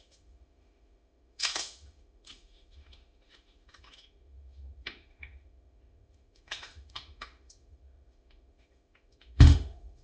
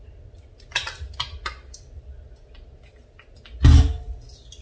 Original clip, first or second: second